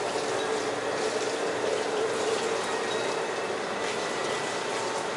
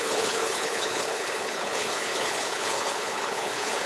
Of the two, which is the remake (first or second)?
second